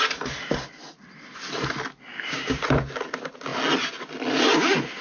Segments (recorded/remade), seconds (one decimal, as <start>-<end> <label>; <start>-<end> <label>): 0.0-2.1 recorded; 2.1-2.6 remade; 2.6-5.0 recorded